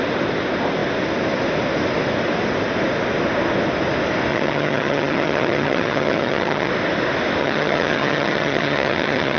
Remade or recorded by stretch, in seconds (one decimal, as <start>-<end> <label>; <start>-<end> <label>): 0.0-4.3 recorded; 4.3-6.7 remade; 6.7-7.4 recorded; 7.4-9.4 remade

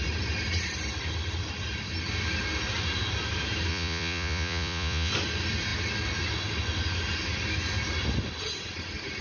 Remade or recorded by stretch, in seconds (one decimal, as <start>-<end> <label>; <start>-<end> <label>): 0.0-3.7 recorded; 3.7-5.1 remade; 5.1-9.2 recorded

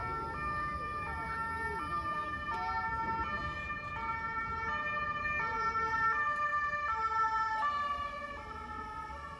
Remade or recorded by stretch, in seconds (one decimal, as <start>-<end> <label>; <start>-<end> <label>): 0.0-6.5 recorded; 6.5-8.5 remade; 8.5-9.4 recorded

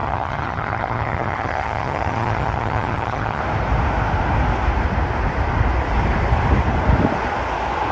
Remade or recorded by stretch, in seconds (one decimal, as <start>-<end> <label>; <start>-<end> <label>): 0.0-3.4 remade; 3.4-7.9 recorded

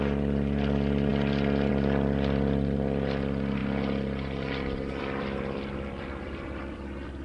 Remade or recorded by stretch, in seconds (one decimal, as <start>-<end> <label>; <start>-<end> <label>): 0.0-1.1 remade; 1.1-1.7 recorded; 1.7-3.6 remade; 3.6-5.0 recorded; 5.0-7.2 remade

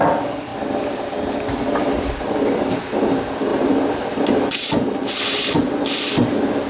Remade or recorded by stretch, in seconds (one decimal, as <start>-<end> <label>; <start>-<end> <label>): 0.0-6.7 recorded

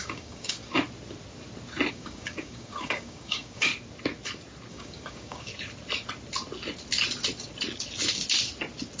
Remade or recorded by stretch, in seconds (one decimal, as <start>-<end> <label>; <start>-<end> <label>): 0.0-0.6 remade; 0.6-1.9 recorded; 1.9-3.7 remade; 3.7-4.7 recorded; 4.7-5.5 remade; 5.5-9.0 recorded

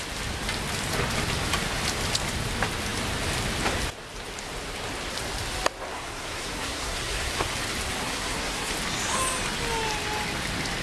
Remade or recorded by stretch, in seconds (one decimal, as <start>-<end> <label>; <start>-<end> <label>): 0.0-5.9 recorded; 5.9-7.5 remade; 7.5-8.0 recorded; 8.0-8.7 remade; 8.7-10.8 recorded